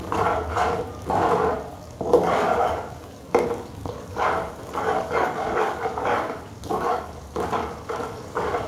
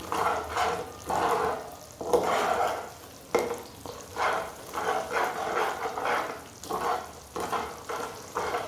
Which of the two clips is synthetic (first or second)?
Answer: first